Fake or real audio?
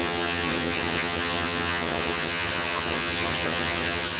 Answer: fake